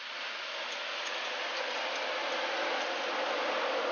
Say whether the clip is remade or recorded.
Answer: recorded